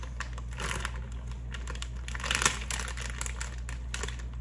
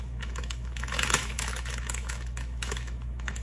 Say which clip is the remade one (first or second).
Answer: second